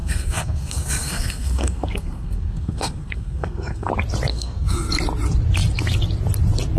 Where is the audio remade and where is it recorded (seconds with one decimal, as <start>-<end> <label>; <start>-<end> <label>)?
0.0-3.9 remade; 3.9-4.3 recorded; 4.3-4.9 remade; 4.9-6.8 recorded